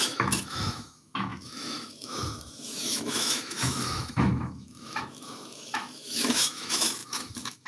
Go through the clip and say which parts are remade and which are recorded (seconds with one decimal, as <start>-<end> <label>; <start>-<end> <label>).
0.0-7.7 remade